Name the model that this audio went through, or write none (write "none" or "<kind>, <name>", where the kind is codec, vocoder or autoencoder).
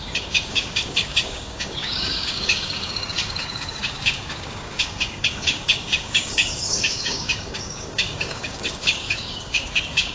codec, DAC